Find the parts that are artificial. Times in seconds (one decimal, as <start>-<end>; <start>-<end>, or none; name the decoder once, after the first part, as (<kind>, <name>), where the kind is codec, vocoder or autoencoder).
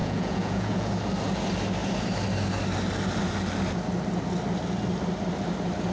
0.0-0.9 (vocoder, Vocos)